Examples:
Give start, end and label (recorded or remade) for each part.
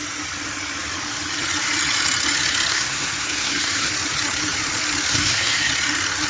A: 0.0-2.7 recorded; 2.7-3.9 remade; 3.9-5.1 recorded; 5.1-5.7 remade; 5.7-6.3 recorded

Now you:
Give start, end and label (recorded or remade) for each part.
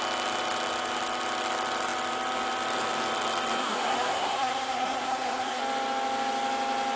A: 0.0-3.6 recorded; 3.6-5.6 remade; 5.6-7.0 recorded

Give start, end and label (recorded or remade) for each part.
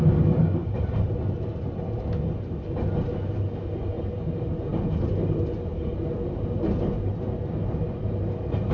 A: 0.0-8.7 recorded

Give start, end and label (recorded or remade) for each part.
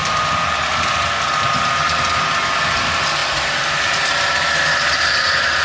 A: 0.0-5.6 recorded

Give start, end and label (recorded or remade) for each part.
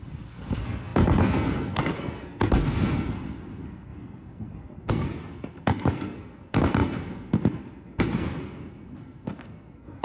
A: 0.0-10.0 remade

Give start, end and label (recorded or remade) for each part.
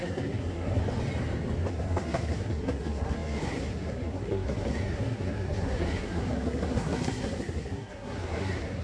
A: 0.0-0.8 remade; 0.8-1.7 recorded; 1.7-8.8 remade